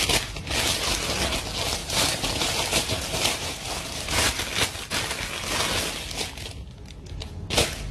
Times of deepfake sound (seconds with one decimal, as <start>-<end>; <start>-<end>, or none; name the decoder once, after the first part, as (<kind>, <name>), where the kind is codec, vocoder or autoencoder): 1.8-4.4 (vocoder, BigVGAN v2)